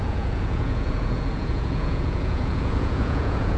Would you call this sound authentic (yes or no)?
no